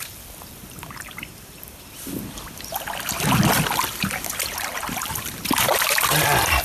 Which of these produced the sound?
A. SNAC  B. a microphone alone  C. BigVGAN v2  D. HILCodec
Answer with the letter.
B